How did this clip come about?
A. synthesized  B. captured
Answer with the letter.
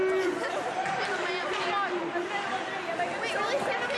B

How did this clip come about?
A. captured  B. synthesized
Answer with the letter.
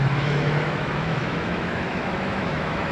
B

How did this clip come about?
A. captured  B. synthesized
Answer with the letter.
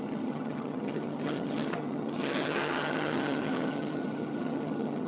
B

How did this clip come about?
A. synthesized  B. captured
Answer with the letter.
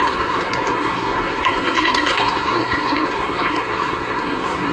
A